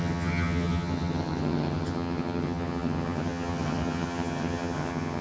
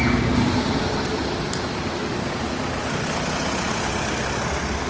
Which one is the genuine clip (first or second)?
second